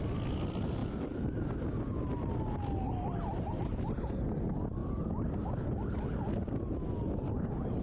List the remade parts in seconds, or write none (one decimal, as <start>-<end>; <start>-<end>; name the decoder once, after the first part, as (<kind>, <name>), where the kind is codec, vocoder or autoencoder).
0.8-1.5 (vocoder, BigVGAN v2); 4.8-6.0